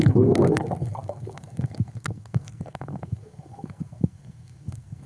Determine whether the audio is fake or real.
fake